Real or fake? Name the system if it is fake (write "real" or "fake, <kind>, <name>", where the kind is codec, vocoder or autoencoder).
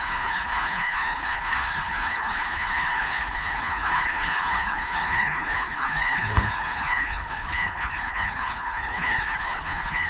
fake, codec, HILCodec